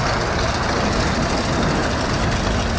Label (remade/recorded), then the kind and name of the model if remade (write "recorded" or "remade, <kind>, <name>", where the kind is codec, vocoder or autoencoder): recorded